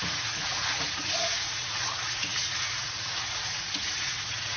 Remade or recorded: remade